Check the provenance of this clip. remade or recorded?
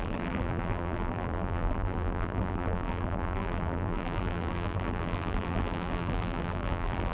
remade